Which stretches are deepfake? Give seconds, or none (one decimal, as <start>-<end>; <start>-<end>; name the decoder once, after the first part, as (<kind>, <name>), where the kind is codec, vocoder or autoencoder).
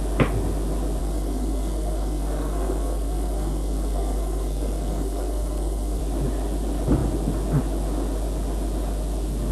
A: 1.0-6.0 (codec, SNAC)